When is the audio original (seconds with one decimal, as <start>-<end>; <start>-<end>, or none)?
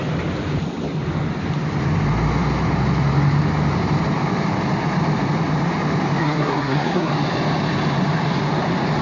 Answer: 0.0-6.2; 7.1-9.0